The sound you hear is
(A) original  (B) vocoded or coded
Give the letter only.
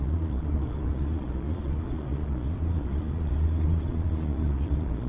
B